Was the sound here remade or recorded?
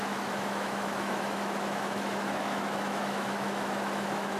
remade